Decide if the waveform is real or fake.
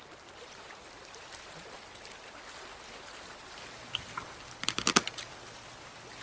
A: real